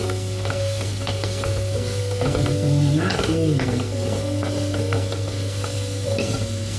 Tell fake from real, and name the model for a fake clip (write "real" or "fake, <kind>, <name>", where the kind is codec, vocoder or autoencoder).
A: fake, codec, SNAC